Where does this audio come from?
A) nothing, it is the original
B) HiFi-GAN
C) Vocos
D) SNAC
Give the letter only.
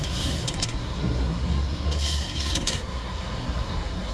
D